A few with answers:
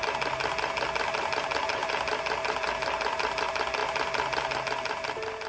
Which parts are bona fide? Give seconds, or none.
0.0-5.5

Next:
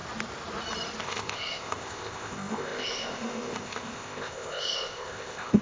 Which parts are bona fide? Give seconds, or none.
0.0-1.0

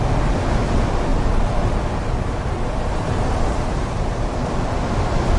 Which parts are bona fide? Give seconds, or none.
0.0-1.1; 4.3-5.4

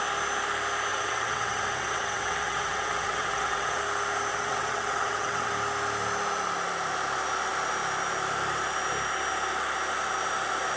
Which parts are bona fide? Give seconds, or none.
0.0-0.9; 3.8-4.3; 5.5-10.8

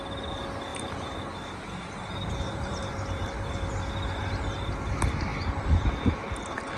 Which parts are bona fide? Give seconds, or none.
0.0-0.7; 3.9-6.8

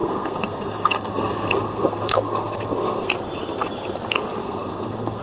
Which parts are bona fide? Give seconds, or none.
3.1-4.4